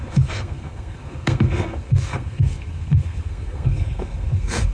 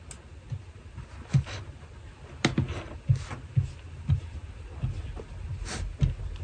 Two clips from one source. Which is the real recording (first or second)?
second